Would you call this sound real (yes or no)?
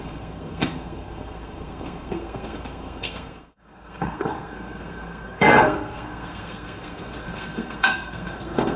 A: no